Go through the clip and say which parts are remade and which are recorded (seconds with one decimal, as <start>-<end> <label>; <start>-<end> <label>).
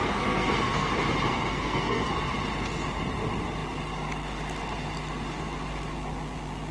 0.0-0.9 remade; 0.9-1.3 recorded; 1.3-2.1 remade; 2.1-6.7 recorded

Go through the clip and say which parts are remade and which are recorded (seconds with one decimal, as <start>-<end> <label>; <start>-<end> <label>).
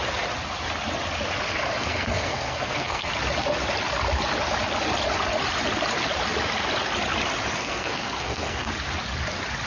0.0-1.8 recorded; 1.8-3.1 remade; 3.1-7.6 recorded; 7.6-8.7 remade; 8.7-9.7 recorded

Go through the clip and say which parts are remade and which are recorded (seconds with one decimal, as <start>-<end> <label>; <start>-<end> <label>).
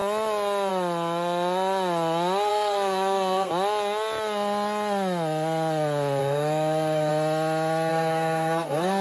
0.0-2.5 recorded; 2.5-3.5 remade; 3.5-6.2 recorded; 6.2-7.1 remade; 7.1-7.9 recorded; 7.9-9.0 remade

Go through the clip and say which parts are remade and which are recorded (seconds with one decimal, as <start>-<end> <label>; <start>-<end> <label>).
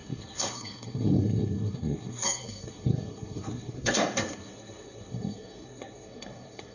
0.0-6.7 remade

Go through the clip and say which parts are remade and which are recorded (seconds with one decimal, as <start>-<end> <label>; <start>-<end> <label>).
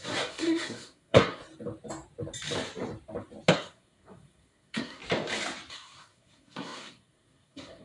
0.0-1.4 remade; 1.4-3.5 recorded; 3.5-5.0 remade; 5.0-5.7 recorded; 5.7-7.8 remade